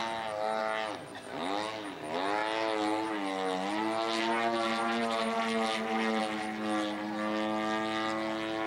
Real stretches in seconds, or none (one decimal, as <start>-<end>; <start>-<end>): 0.0-8.7